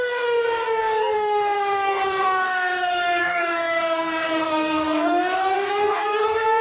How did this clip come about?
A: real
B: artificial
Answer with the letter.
B